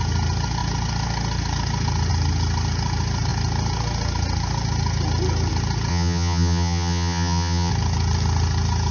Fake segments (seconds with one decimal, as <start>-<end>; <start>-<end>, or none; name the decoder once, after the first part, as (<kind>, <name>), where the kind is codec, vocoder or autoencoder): 5.9-7.7 (vocoder, HiFi-GAN)